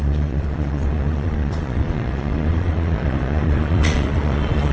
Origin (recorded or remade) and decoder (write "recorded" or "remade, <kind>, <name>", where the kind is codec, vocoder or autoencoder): remade, vocoder, Vocos